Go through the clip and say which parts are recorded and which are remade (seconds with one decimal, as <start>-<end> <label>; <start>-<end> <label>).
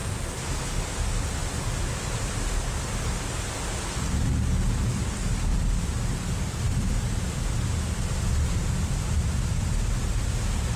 0.0-0.6 remade; 0.6-1.4 recorded; 1.4-2.1 remade; 2.1-5.5 recorded; 5.5-10.3 remade; 10.3-10.8 recorded